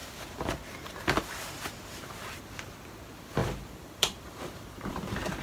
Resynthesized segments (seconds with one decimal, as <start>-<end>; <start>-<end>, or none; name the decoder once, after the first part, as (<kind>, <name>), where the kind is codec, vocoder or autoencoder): 3.4-4.9 (vocoder, BigVGAN v2)